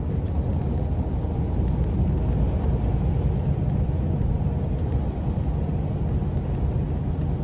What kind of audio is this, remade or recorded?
recorded